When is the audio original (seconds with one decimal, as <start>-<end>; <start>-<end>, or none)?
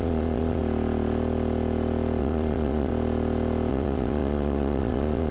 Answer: 0.6-2.2; 2.9-3.7